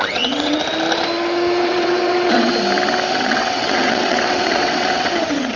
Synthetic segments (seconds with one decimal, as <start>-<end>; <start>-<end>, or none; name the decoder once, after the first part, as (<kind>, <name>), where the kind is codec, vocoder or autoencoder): 0.0-0.6 (vocoder, WaveNeXt); 1.6-2.5; 3.1-5.6